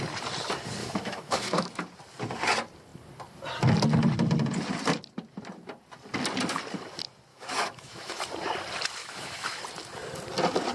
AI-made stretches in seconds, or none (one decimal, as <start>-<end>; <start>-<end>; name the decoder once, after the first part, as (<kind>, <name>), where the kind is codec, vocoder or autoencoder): 0.8-1.7 (autoencoder, DAC-VAE); 7.3-8.2; 9.0-9.6